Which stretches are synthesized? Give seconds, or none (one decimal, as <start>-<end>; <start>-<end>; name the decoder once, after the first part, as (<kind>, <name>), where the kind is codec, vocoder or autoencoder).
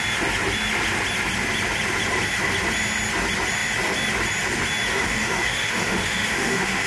4.9-6.9 (autoencoder, DAC-VAE)